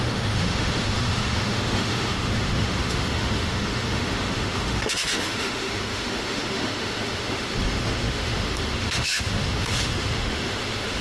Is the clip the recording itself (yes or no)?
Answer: no